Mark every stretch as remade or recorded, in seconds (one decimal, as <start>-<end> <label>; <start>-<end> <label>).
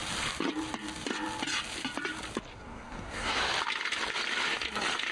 0.0-2.5 recorded; 2.5-3.4 remade; 3.4-5.1 recorded